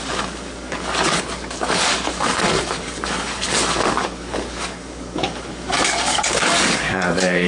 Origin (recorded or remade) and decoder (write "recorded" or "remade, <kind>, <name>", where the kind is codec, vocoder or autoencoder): remade, codec, DAC